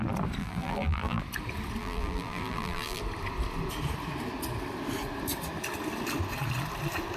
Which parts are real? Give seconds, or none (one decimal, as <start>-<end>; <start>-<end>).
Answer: 0.0-0.4; 1.2-1.8; 3.0-7.2